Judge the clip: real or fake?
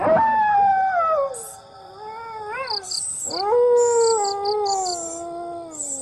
real